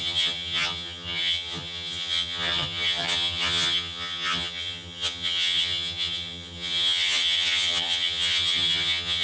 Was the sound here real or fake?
fake